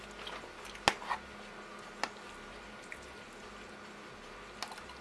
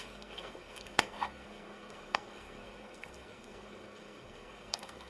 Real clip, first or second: first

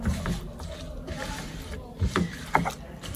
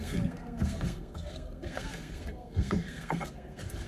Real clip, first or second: first